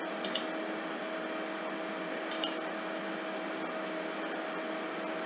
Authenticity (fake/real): real